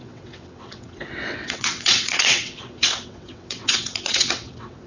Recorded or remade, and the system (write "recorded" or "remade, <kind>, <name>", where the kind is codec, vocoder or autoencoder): remade, vocoder, WaveNeXt